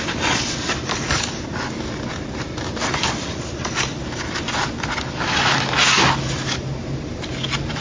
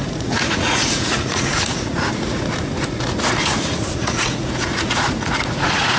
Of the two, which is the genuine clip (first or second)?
first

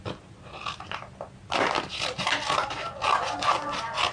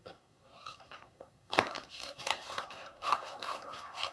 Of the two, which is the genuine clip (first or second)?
first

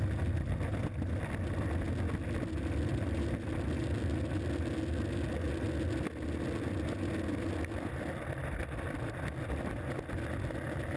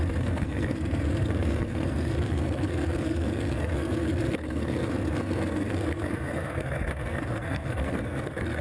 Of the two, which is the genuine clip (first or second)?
first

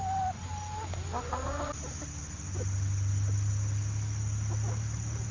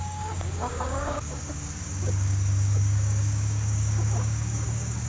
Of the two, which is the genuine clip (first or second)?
first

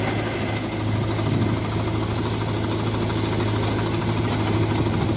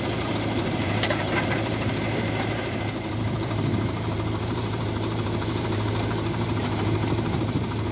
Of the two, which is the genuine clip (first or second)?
first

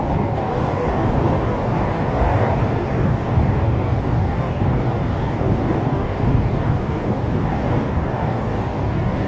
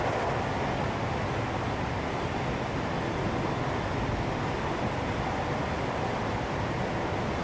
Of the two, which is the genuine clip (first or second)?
second